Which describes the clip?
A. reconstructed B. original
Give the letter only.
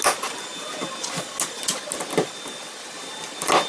B